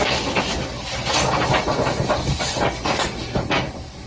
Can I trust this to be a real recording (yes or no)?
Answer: yes